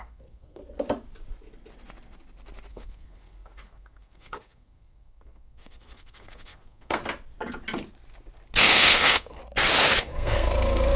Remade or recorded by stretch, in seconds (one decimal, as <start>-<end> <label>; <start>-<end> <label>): 0.0-0.6 remade; 0.6-2.7 recorded; 2.7-7.0 remade; 7.0-8.6 recorded; 8.6-9.4 remade; 9.4-10.0 recorded; 10.0-11.0 remade